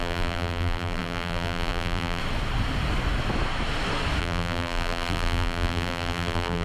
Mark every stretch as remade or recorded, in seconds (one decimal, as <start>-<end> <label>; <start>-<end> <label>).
0.0-2.2 remade; 2.2-4.2 recorded; 4.2-6.6 remade